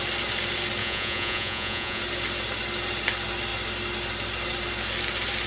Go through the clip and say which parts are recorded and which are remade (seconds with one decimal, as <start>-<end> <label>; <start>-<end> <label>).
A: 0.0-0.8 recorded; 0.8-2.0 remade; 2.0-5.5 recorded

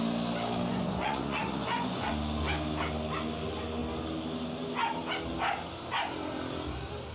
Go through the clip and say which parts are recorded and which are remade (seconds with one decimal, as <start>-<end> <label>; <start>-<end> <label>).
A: 0.0-0.7 recorded; 0.7-2.1 remade; 2.1-7.1 recorded

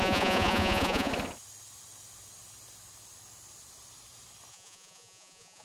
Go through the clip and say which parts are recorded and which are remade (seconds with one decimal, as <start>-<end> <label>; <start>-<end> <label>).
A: 0.0-1.1 remade; 1.1-4.5 recorded; 4.5-5.6 remade